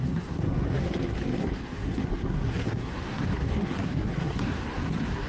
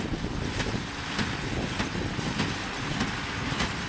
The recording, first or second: second